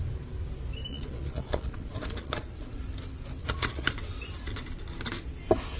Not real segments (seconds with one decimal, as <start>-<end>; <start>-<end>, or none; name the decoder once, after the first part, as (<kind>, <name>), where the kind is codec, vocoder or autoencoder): 0.9-2.8 (vocoder, Vocos); 3.4-3.9